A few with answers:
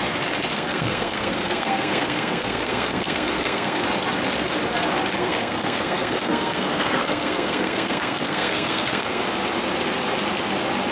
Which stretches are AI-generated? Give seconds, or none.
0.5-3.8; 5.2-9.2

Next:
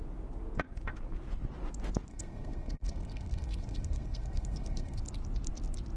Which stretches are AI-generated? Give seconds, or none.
2.1-5.0

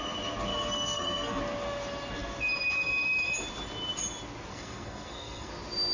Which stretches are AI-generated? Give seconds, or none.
0.5-1.4; 4.5-5.5

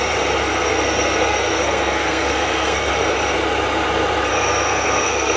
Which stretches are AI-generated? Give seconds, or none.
0.4-2.9; 4.3-5.4